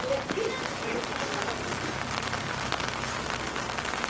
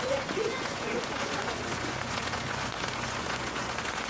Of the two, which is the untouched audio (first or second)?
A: first